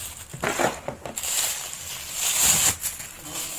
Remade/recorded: recorded